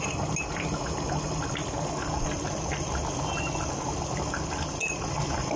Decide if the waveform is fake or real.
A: real